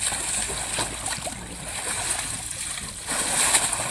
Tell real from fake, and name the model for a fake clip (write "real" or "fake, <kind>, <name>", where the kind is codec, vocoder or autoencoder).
real